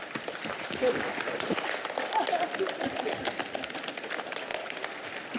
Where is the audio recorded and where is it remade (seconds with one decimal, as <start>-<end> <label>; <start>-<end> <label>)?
0.0-5.4 recorded